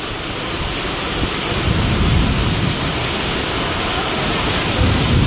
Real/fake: real